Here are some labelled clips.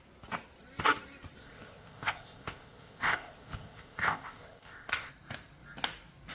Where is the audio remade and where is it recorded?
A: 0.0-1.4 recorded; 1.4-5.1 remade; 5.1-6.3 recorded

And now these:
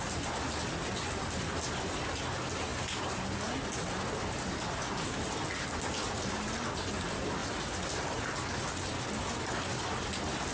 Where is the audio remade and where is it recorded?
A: 0.0-10.5 recorded